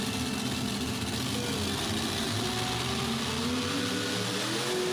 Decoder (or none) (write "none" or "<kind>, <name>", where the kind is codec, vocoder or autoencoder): none